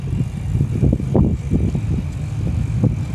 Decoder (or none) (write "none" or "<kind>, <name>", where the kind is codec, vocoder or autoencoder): none